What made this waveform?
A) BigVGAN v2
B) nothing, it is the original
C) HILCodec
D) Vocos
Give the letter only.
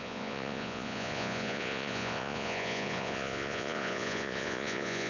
D